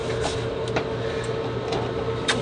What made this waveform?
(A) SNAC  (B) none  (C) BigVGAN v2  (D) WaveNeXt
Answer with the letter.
B